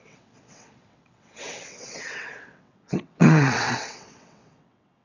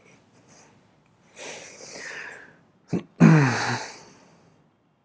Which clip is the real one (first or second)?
second